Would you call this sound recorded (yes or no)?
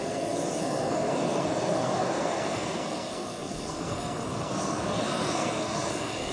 no